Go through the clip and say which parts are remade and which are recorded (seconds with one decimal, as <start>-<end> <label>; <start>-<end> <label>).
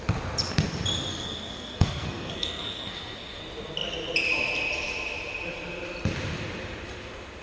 0.0-1.1 recorded; 1.1-3.4 remade; 3.4-7.4 recorded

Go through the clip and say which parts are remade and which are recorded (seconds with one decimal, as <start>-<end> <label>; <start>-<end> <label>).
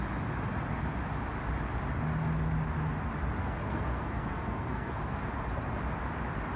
0.0-3.4 recorded; 3.4-5.2 remade; 5.2-6.6 recorded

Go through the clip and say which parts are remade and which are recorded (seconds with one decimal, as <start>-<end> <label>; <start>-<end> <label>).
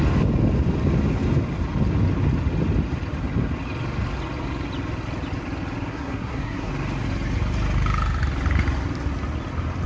0.0-5.9 recorded; 5.9-6.7 remade; 6.7-9.9 recorded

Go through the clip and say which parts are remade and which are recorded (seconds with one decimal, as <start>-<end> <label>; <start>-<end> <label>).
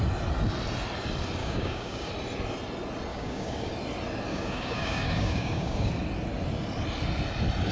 0.0-1.4 recorded; 1.4-2.1 remade; 2.1-3.1 recorded; 3.1-3.7 remade; 3.7-4.3 recorded; 4.3-5.9 remade; 5.9-7.7 recorded